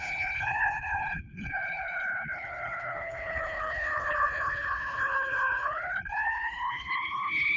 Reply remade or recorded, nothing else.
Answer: remade